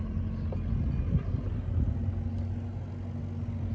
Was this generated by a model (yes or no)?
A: no